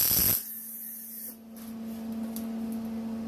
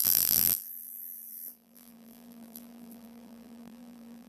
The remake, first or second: second